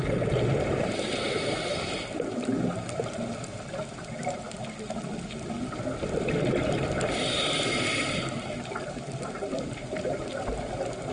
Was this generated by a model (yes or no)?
no